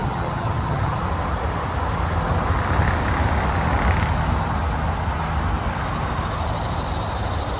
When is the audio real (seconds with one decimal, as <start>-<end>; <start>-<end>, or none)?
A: 1.0-7.6